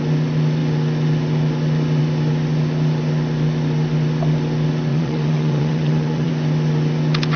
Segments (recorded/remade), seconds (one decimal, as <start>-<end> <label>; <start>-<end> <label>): 0.0-4.9 recorded; 4.9-6.3 remade; 6.3-7.4 recorded